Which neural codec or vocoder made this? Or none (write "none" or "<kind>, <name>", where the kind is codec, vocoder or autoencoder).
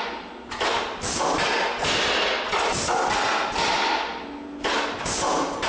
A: none